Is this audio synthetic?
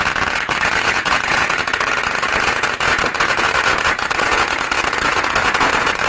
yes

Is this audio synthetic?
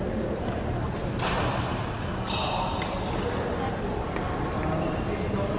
no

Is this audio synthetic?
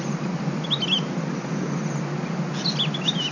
no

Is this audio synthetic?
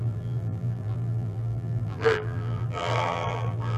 yes